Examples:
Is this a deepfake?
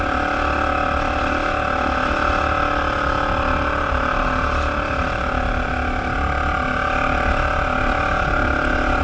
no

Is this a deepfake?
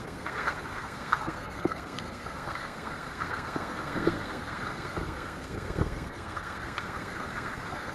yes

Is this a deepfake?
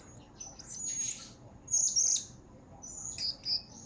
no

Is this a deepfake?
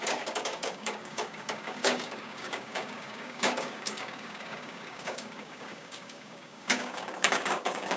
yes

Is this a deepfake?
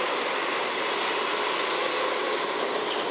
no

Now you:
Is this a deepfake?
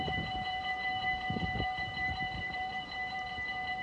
yes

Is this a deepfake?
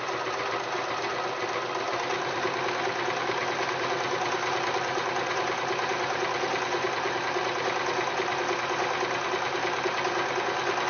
no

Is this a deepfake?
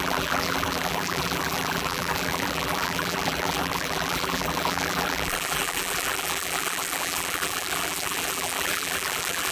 yes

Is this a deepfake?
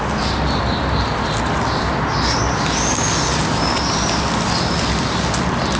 no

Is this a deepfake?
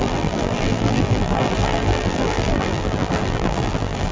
yes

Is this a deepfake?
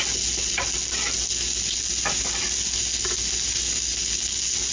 no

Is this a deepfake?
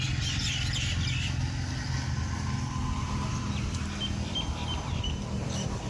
no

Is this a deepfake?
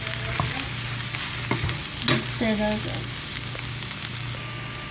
no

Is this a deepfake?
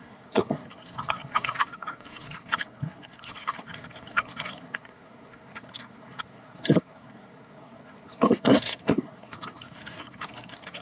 yes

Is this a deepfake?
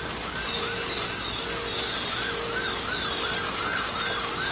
no